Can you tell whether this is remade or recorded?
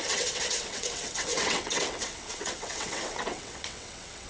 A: remade